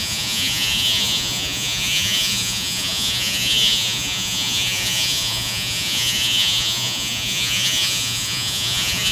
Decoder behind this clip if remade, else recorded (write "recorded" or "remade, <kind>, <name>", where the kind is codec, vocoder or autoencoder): remade, vocoder, Vocos